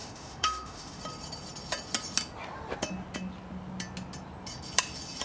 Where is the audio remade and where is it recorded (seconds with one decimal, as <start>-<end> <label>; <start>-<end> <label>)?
0.0-1.0 remade; 1.0-5.2 recorded

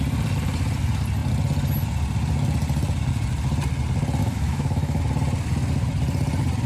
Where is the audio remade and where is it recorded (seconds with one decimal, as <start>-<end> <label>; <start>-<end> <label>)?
0.0-4.2 recorded; 4.2-5.0 remade; 5.0-6.7 recorded